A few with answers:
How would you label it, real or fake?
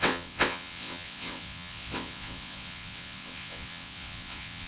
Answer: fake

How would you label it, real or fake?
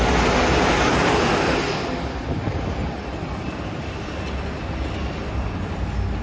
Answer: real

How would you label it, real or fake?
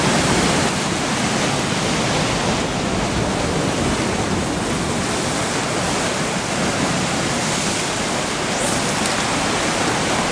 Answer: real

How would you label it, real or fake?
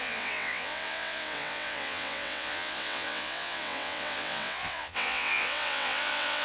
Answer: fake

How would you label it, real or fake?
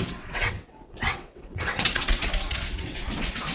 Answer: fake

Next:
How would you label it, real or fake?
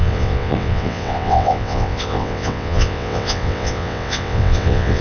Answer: fake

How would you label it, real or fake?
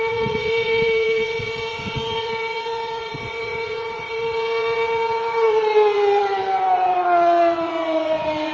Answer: fake